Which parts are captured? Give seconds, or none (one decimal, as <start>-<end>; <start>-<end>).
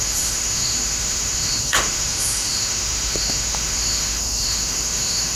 none